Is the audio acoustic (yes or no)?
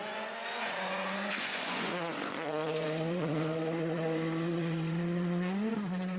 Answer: no